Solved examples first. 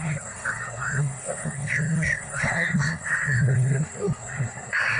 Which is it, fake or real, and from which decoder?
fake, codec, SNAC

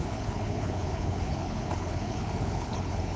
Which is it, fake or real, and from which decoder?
fake, codec, HILCodec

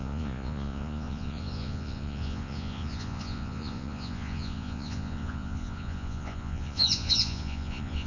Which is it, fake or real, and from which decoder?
fake, vocoder, Vocos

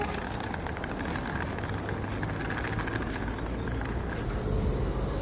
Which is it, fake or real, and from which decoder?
real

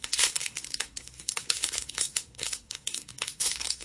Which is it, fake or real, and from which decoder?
fake, codec, SNAC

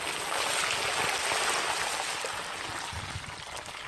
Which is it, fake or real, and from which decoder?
real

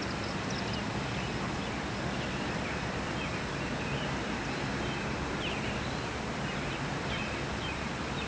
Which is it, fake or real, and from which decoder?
real